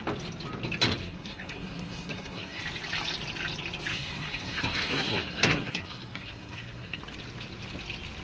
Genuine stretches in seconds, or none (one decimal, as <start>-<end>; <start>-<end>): 0.0-1.0; 2.6-3.9; 7.0-8.2